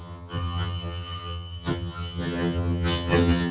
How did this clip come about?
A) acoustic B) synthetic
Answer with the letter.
B